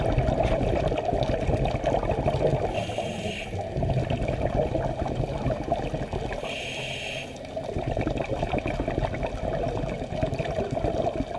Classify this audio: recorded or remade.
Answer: recorded